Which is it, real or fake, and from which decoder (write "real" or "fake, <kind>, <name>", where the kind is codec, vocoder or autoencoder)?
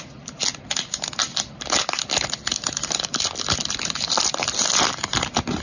real